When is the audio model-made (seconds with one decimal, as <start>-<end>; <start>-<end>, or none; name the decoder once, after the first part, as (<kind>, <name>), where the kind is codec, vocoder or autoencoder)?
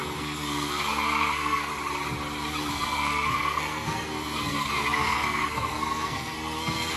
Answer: 0.0-1.7 (codec, SNAC); 2.7-7.0